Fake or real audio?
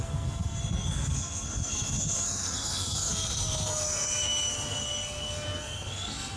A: fake